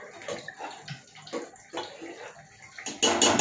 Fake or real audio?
real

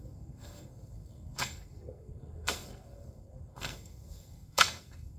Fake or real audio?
fake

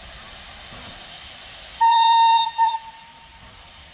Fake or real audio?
fake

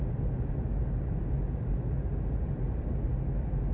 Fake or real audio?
real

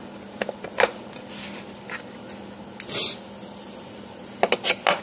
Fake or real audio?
real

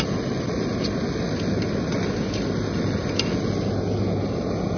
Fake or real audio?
real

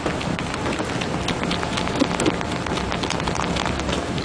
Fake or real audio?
real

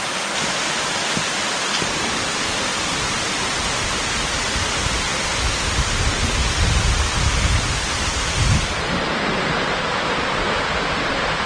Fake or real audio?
real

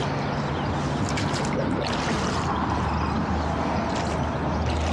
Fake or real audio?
real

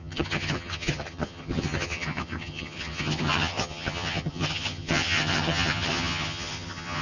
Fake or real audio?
fake